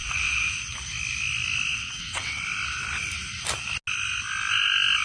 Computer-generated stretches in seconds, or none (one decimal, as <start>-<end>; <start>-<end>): 1.7-2.4